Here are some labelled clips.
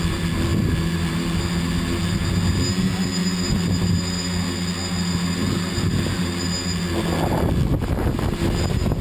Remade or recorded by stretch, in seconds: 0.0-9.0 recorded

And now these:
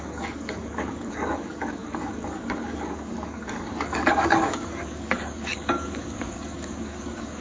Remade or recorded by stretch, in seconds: 0.0-7.4 remade

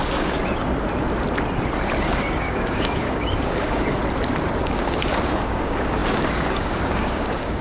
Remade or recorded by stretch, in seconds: 0.0-0.4 remade; 0.4-2.0 recorded; 2.0-4.0 remade; 4.0-4.6 recorded; 4.6-7.6 remade

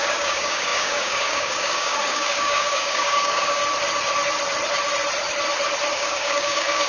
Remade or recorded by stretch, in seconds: 0.0-3.6 remade; 3.6-5.9 recorded; 5.9-6.9 remade

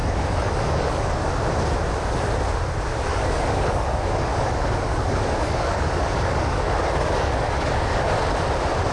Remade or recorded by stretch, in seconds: 0.0-1.3 remade; 1.3-3.1 recorded; 3.1-8.1 remade; 8.1-8.9 recorded

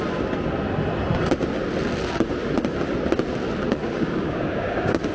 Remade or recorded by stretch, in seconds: 0.0-3.8 recorded; 3.8-5.1 remade

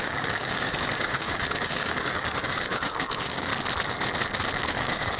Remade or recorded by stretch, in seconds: 0.0-3.5 remade; 3.5-4.7 recorded; 4.7-5.2 remade